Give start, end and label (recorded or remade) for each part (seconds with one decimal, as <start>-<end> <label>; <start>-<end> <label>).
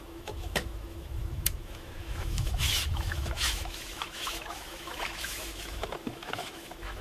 0.0-7.0 remade